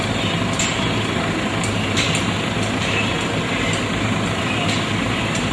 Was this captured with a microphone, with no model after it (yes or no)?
yes